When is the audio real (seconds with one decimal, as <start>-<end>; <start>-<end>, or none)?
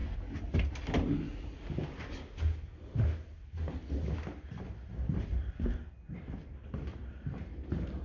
0.0-3.9